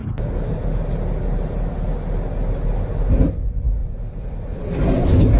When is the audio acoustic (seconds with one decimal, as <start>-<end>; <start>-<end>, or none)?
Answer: 0.0-3.8; 4.6-5.4